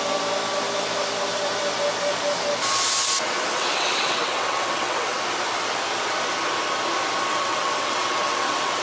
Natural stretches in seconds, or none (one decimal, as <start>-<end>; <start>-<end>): 0.0-3.5; 5.2-7.3